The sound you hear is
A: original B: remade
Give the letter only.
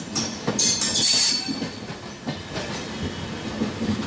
A